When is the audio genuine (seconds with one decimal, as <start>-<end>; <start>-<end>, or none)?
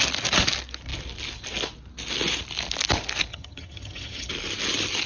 0.0-3.3; 4.3-5.1